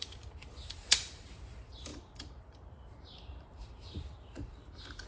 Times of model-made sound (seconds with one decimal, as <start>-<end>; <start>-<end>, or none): 0.0-5.1